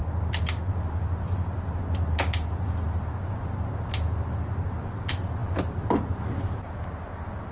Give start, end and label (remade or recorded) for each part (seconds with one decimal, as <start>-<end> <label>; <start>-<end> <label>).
0.0-7.5 recorded